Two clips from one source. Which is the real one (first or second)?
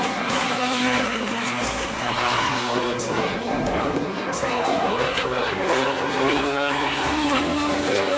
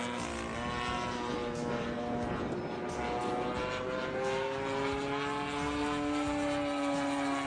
second